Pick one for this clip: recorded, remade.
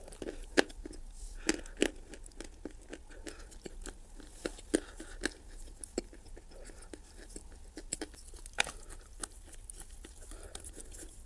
recorded